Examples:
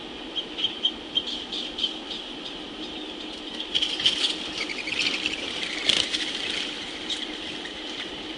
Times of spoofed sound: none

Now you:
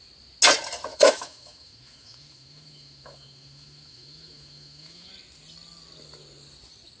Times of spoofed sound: 0.9-5.1

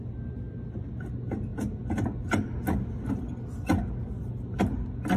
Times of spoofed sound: none

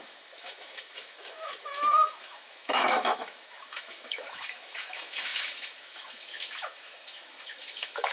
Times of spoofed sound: 0.0-8.1

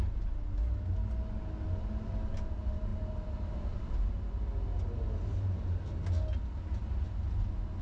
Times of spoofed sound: none

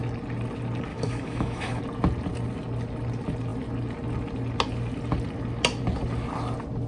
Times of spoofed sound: 0.9-1.8

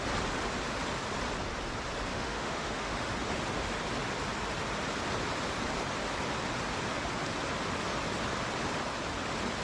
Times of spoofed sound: 2.1-3.1

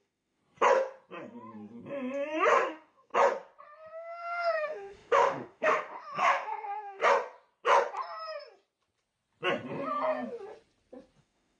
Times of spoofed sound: 0.0-0.4; 2.7-3.1; 3.9-7.0; 11.2-11.6